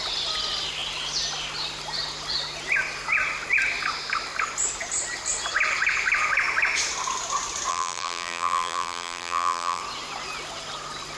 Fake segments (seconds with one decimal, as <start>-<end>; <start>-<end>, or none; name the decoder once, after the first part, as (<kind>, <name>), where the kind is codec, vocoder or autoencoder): 7.7-9.8 (vocoder, BigVGAN v2)